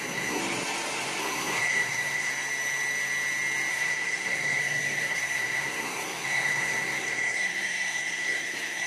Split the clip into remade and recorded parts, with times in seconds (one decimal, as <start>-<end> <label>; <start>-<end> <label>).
0.0-0.4 remade; 0.4-1.2 recorded; 1.2-2.3 remade; 2.3-3.7 recorded; 3.7-8.9 remade